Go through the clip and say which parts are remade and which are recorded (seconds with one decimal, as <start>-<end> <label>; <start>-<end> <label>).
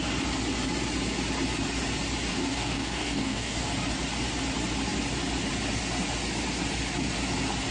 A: 0.0-2.3 recorded; 2.3-3.7 remade; 3.7-7.7 recorded